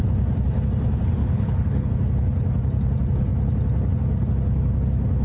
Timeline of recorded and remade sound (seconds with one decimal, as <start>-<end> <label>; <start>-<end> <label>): 0.0-1.2 recorded; 1.2-1.9 remade; 1.9-5.2 recorded